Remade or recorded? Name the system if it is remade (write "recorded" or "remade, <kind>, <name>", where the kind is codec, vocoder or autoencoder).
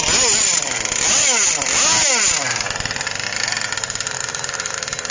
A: recorded